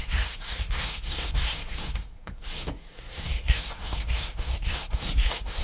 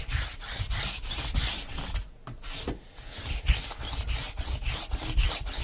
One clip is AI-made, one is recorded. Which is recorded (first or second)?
second